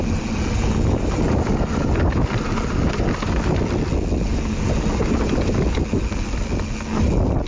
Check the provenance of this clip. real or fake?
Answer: real